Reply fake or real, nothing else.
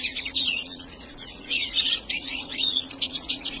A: fake